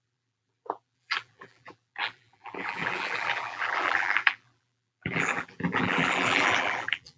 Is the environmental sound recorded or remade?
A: remade